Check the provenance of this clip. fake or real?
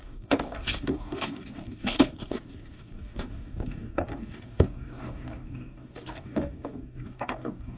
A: fake